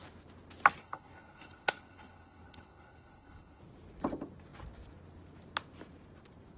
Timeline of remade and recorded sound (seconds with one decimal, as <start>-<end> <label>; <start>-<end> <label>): 0.0-0.8 recorded; 0.8-3.6 remade; 3.6-6.6 recorded